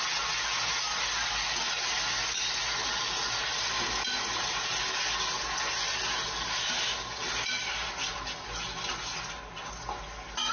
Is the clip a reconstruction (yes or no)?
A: no